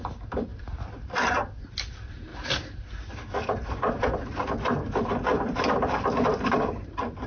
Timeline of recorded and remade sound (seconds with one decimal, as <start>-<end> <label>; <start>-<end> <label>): 0.0-5.3 recorded; 5.3-6.1 remade; 6.1-7.3 recorded